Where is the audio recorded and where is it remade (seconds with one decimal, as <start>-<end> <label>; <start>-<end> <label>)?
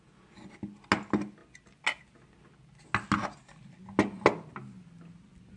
0.0-5.6 recorded